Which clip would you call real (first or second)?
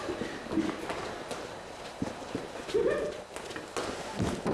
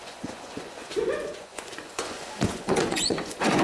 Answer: first